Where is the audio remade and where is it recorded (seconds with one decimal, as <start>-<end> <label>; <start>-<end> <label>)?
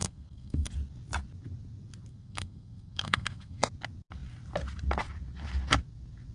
0.0-0.7 remade; 0.7-2.1 recorded; 2.1-3.7 remade; 3.7-6.3 recorded